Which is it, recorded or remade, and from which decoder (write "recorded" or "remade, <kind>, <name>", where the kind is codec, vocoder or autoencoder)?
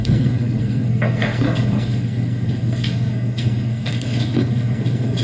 remade, codec, SNAC